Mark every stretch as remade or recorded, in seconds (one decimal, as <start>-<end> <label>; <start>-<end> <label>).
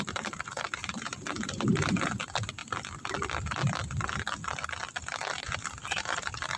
0.0-2.6 remade; 2.6-5.4 recorded; 5.4-6.6 remade